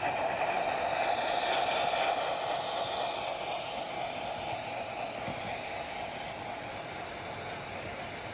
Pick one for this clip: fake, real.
real